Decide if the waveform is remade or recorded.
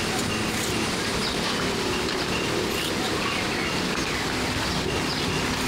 recorded